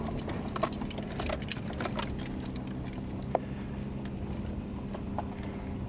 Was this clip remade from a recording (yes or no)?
no